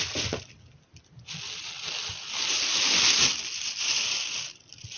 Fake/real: real